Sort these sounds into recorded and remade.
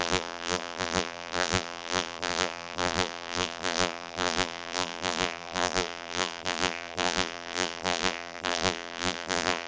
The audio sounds remade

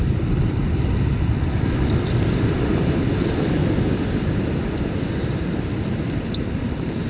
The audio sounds recorded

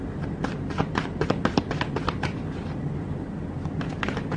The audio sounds recorded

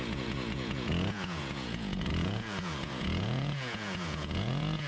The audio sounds remade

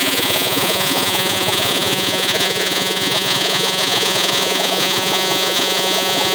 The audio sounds remade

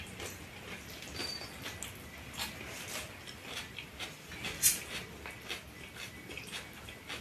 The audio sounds recorded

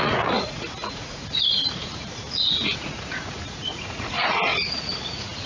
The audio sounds remade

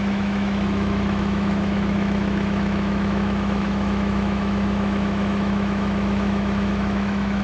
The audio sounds remade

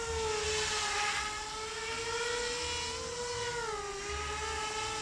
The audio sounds recorded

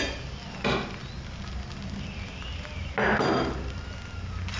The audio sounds recorded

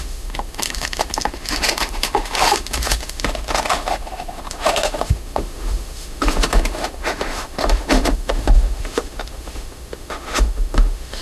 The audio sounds remade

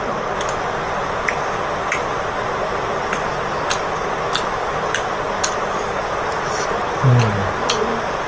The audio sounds recorded